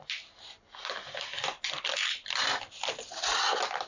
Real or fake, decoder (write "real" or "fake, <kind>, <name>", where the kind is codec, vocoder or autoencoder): real